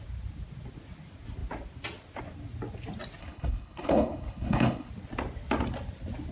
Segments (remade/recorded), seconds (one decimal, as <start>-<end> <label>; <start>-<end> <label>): 0.0-3.2 recorded; 3.2-4.9 remade; 4.9-6.3 recorded